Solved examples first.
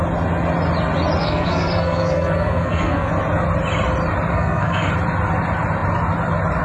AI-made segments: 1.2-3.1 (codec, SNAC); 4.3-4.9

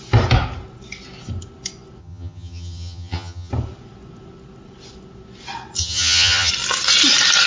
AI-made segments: 2.0-3.5 (vocoder, HiFi-GAN); 5.8-6.5

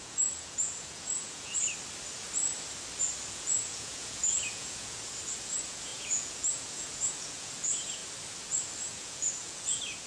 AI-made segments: 0.0-1.5 (vocoder, Vocos); 3.3-8.0; 8.8-10.1

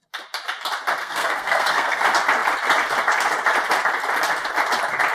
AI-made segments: 1.0-2.0 (codec, SNAC)

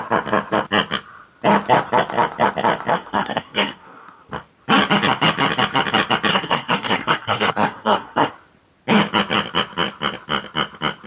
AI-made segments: 2.9-4.3 (codec, SNAC); 6.3-8.3